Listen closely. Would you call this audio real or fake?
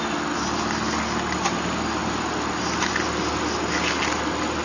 real